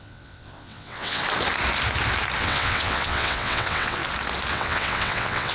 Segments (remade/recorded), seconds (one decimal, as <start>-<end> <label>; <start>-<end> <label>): 0.0-1.2 remade; 1.2-2.4 recorded; 2.4-4.0 remade; 4.0-4.5 recorded; 4.5-5.5 remade